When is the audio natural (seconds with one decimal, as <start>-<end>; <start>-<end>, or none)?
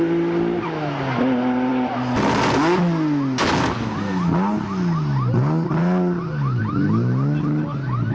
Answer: 0.0-8.1